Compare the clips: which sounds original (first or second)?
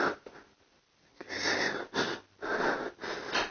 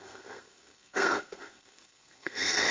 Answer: first